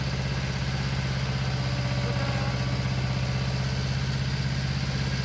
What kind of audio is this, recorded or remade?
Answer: recorded